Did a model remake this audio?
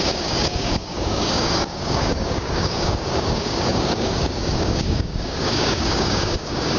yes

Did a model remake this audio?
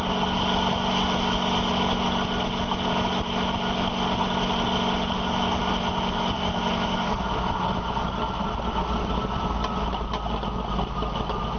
no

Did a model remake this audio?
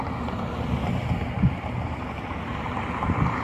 no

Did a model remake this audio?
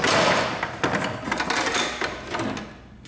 no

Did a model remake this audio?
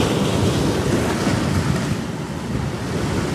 no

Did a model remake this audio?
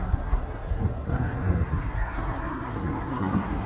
yes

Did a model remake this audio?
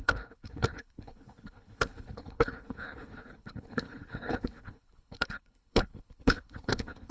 yes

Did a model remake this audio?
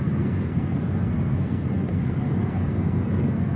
yes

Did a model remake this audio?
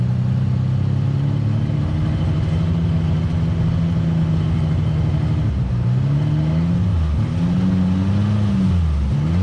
no